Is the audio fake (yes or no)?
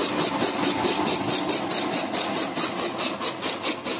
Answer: no